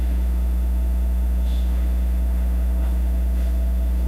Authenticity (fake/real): fake